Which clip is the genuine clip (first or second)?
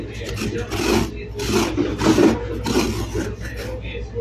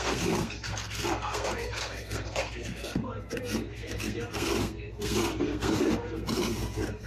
first